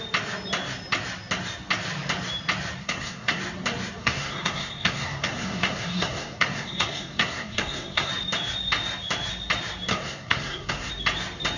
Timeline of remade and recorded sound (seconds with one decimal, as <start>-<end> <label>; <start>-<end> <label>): 0.0-2.8 recorded; 2.8-3.4 remade; 3.4-4.0 recorded; 4.0-8.1 remade; 8.1-9.9 recorded; 9.9-10.9 remade; 10.9-11.6 recorded